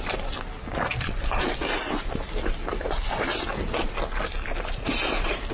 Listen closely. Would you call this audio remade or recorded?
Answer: recorded